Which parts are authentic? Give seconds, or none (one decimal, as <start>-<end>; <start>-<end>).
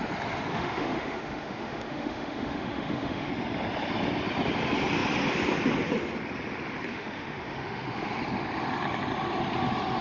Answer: 0.0-0.5; 3.3-6.9; 8.1-10.0